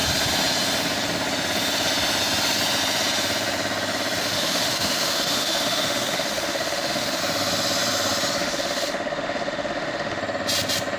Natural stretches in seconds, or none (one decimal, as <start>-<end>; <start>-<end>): 0.0-4.2; 7.2-8.4; 10.2-11.0